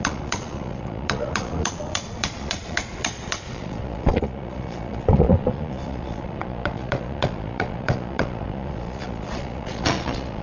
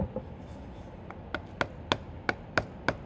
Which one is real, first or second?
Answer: second